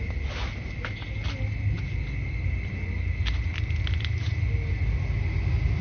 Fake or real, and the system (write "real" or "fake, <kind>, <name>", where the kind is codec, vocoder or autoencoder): real